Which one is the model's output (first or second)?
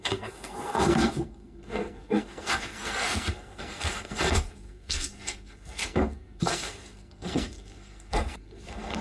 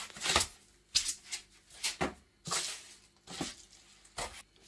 first